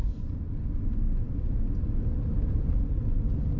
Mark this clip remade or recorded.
recorded